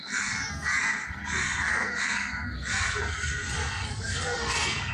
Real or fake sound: fake